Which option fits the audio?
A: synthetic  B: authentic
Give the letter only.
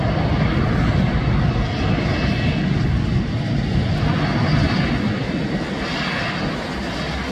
B